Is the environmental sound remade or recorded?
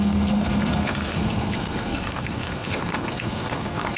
remade